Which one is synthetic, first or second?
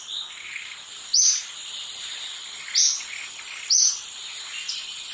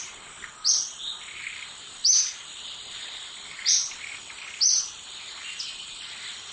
second